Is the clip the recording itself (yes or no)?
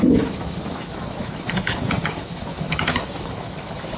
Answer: no